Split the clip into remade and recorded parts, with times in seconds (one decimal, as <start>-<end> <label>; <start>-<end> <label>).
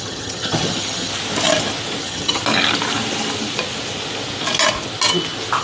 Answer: 0.0-1.1 remade; 1.1-2.0 recorded; 2.0-2.4 remade; 2.4-5.6 recorded